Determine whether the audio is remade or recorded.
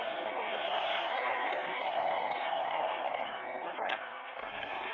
remade